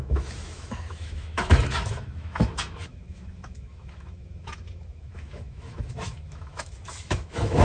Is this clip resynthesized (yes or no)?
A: yes